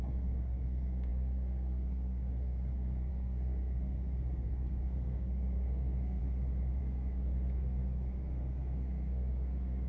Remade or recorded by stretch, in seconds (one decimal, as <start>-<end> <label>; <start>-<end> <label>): 0.0-6.2 remade; 6.2-6.8 recorded; 6.8-9.9 remade